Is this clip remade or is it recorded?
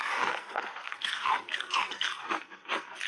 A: remade